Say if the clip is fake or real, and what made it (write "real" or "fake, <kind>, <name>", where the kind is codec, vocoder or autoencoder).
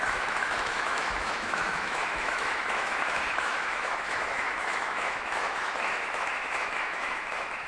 fake, autoencoder, DAC-VAE